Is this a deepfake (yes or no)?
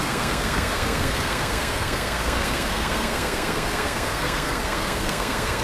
yes